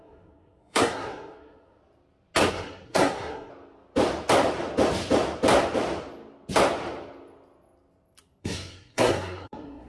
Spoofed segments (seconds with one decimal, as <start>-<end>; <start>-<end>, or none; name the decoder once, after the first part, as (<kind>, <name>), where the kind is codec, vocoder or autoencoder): 0.0-1.8 (codec, SNAC); 2.5-3.5; 8.4-9.9